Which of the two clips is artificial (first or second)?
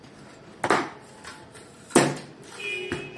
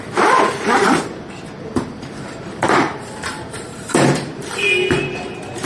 second